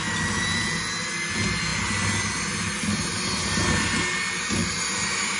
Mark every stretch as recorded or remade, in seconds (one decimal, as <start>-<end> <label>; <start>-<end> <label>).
0.0-4.6 recorded; 4.6-5.4 remade

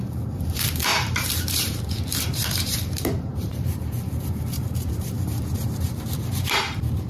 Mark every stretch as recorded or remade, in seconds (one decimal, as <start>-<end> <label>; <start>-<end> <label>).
0.0-7.1 remade

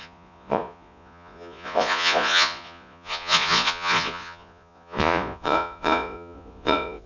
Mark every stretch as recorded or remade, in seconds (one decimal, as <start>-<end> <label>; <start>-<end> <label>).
0.0-7.1 remade

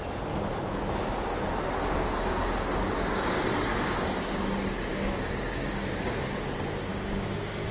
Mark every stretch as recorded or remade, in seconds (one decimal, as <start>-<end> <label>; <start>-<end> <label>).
0.0-3.7 recorded; 3.7-4.4 remade; 4.4-4.9 recorded; 4.9-5.9 remade; 5.9-6.9 recorded; 6.9-7.7 remade

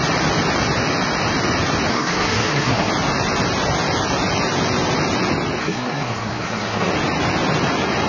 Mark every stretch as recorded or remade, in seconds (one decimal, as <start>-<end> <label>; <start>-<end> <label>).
0.0-1.9 recorded; 1.9-2.9 remade; 2.9-5.6 recorded; 5.6-6.9 remade; 6.9-8.1 recorded

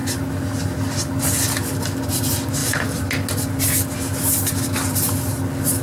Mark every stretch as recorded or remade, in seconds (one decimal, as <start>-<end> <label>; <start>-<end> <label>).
0.0-5.8 recorded